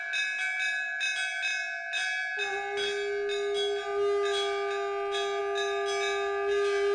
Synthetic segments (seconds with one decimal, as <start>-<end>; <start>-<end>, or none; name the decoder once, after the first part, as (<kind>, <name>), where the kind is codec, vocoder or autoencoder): none